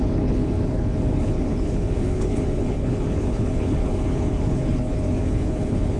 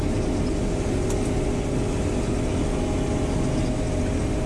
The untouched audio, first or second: second